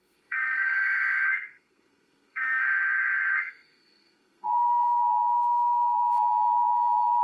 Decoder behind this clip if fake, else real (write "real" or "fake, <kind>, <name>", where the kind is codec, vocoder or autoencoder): fake, codec, SNAC